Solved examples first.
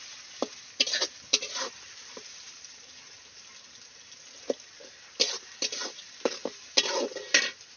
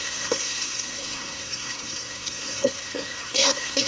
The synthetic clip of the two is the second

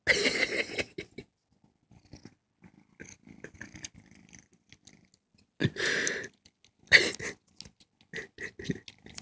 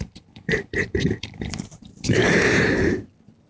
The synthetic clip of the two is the second